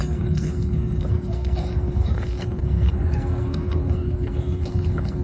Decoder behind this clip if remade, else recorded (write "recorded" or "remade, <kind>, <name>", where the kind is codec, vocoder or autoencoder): remade, codec, SNAC